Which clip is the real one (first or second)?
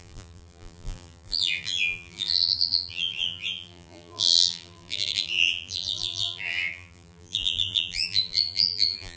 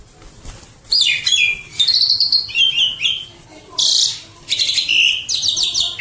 second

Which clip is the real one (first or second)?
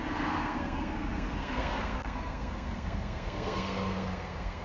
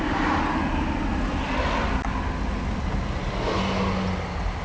second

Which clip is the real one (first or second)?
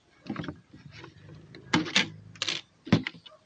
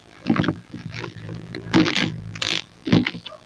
first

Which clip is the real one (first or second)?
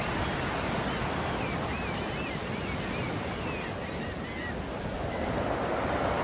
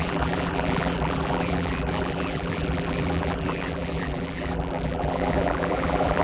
first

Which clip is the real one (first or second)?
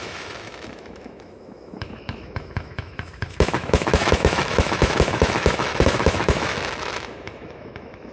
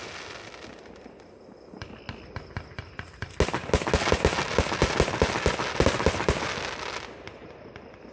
second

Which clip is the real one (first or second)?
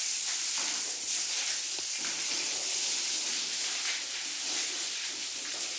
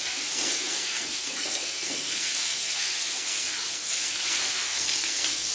first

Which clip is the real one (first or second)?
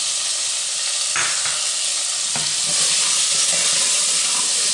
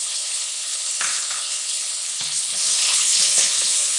first